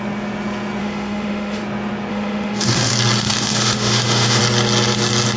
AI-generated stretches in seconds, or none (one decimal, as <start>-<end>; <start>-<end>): 0.8-1.6; 2.1-2.9; 3.3-4.4